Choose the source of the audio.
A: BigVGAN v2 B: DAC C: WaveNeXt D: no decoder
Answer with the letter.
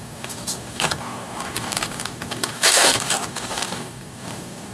B